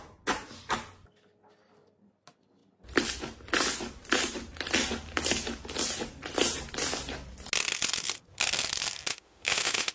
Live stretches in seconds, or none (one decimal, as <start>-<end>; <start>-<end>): 0.0-9.1

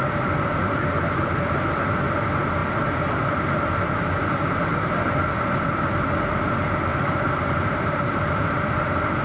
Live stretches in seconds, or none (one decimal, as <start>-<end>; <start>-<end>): 0.0-6.9; 8.4-9.2

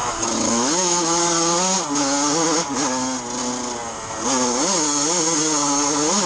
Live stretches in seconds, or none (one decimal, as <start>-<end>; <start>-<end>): 1.2-6.3

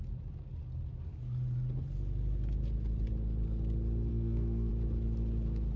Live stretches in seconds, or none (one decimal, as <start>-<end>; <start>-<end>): 0.0-4.1; 4.7-5.8

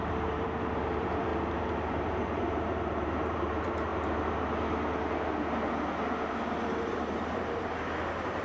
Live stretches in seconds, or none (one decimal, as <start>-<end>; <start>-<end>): 1.3-1.9; 3.9-6.8